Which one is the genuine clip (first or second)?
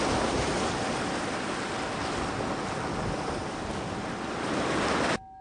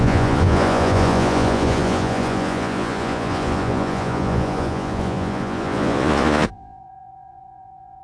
first